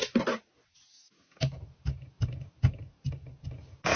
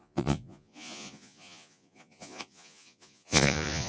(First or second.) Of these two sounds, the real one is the first